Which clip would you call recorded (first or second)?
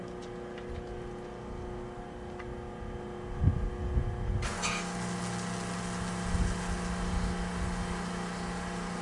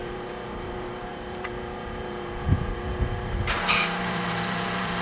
first